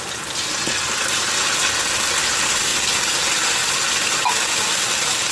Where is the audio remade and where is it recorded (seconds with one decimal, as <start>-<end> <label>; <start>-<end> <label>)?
0.0-5.3 recorded